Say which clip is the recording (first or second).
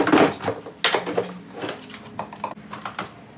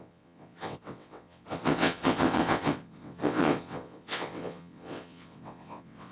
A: first